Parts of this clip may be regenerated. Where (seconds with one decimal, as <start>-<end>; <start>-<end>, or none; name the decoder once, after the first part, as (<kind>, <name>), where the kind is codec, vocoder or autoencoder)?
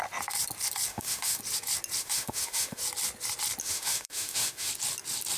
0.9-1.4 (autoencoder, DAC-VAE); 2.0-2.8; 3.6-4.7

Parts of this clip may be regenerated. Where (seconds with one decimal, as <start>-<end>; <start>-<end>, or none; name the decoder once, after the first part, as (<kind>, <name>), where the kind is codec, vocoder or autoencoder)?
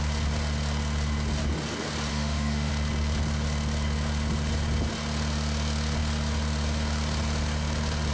2.1-2.7 (autoencoder, DAC-VAE)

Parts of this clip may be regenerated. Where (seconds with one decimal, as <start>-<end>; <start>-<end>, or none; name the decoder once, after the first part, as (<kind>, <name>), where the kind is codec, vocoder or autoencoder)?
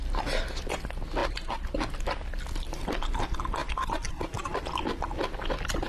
none